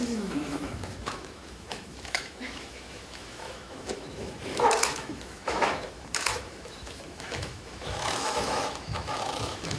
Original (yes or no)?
no